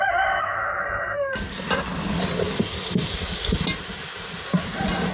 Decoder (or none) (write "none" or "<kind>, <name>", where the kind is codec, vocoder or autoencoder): none